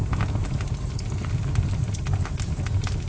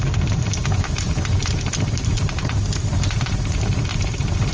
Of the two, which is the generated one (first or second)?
second